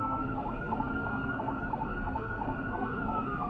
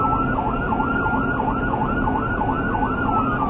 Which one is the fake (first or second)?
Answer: first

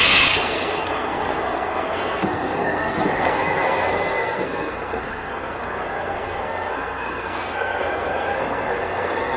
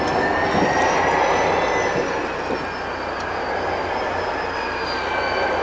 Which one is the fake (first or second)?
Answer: first